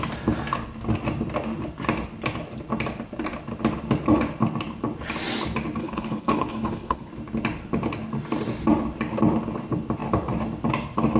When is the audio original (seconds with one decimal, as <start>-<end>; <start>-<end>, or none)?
0.0-5.8; 7.1-11.2